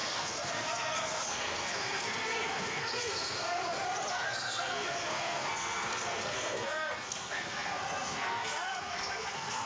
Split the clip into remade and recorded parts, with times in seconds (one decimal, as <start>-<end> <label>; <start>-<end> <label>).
0.0-3.6 remade; 3.6-4.1 recorded; 4.1-9.7 remade